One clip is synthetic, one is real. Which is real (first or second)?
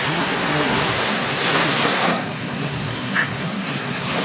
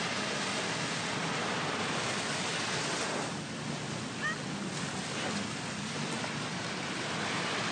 second